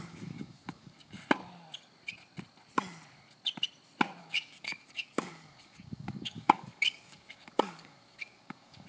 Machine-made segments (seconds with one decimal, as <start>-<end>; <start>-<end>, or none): 0.0-1.2; 4.2-8.9